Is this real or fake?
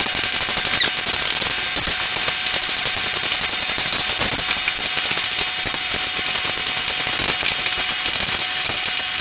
real